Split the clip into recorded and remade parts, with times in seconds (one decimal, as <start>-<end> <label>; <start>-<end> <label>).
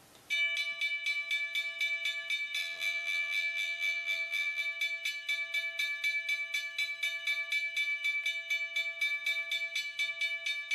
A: 0.0-2.6 recorded; 2.6-4.6 remade; 4.6-10.7 recorded